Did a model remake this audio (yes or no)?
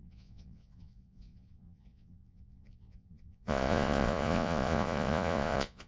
yes